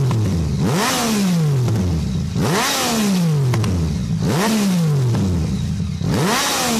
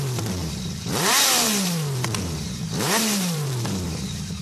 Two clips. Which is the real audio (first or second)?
first